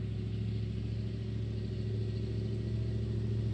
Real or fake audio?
real